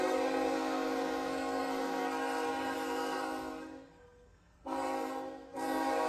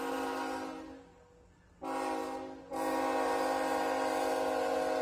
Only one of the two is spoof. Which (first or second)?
first